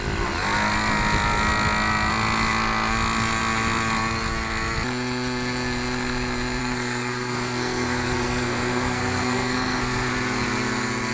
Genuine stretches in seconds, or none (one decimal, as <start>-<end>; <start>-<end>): 0.0-6.6; 10.1-11.1